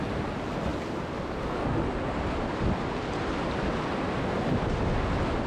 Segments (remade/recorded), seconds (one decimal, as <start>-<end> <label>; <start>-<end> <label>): 0.0-5.5 recorded